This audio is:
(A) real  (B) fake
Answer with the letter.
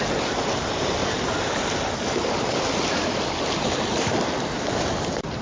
A